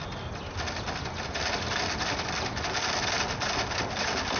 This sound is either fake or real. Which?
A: real